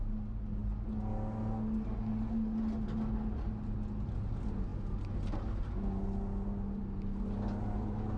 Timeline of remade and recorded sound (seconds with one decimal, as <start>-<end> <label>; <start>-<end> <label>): 0.0-8.2 recorded